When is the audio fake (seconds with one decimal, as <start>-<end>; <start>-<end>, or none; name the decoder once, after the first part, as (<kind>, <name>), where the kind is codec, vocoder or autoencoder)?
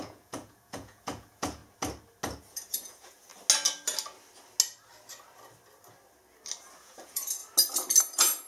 0.0-1.6 (vocoder, Vocos); 2.4-3.3; 6.8-7.4; 8.0-8.5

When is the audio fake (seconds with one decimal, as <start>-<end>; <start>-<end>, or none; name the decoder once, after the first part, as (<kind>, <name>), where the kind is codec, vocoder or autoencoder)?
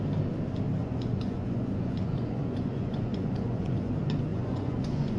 0.8-3.9 (vocoder, Vocos); 4.3-5.2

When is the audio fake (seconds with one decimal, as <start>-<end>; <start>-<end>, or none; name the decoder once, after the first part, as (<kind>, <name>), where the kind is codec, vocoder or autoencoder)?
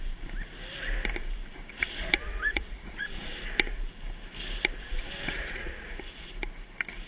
1.7-3.4 (vocoder, Vocos); 4.9-6.3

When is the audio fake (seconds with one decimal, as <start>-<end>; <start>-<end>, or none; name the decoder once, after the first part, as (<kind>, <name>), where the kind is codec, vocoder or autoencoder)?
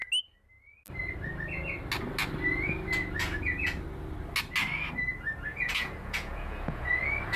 5.5-7.0 (vocoder, Vocos)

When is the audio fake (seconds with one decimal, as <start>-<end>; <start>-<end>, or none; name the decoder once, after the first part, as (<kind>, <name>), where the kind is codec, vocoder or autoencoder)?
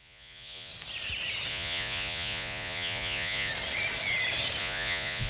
0.0-0.7 (vocoder, Vocos); 1.5-3.5; 4.6-5.3